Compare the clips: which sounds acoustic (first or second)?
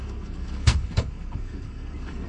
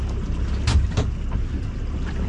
second